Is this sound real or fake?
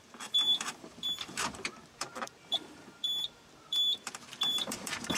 fake